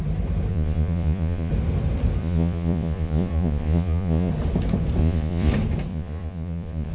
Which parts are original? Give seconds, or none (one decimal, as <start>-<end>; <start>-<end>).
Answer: 0.0-0.5; 1.5-2.2; 4.3-5.0; 5.5-5.9